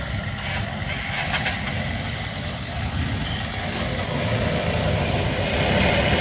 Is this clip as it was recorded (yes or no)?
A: yes